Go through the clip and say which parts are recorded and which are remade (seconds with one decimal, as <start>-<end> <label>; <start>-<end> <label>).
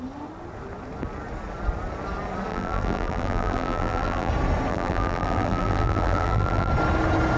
0.0-2.5 recorded; 2.5-4.3 remade; 4.3-4.7 recorded; 4.7-6.7 remade; 6.7-7.4 recorded